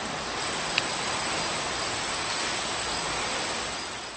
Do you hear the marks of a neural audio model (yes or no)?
no